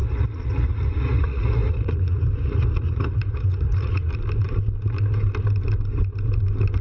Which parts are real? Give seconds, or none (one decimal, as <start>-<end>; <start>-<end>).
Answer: 4.1-6.8